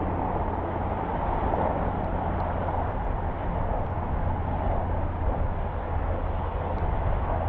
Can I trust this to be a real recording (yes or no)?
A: yes